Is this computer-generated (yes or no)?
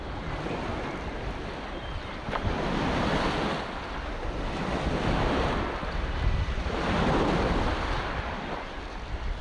no